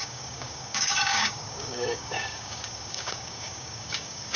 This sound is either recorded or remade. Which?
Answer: remade